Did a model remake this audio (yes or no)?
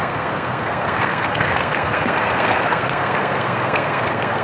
yes